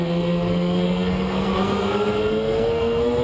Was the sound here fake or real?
fake